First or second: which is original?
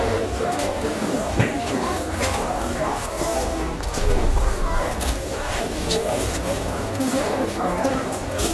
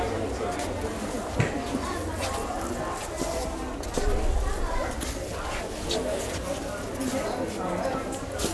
second